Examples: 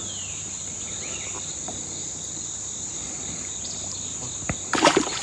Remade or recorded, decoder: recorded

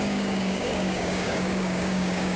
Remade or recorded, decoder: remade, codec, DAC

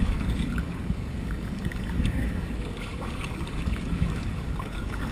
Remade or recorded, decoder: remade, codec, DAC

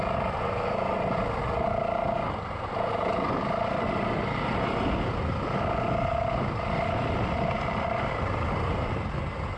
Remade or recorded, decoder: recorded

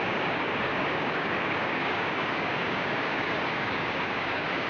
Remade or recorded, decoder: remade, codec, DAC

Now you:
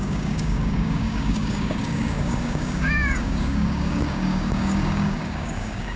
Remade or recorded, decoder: remade, codec, DAC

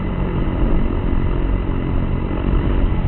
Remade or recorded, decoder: recorded